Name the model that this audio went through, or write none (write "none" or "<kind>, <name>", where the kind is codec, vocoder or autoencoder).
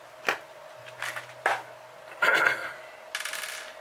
none